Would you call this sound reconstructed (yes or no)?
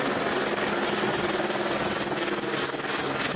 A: no